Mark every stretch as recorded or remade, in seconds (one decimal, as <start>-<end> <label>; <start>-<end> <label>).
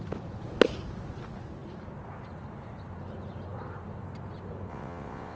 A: 0.0-4.7 recorded; 4.7-5.4 remade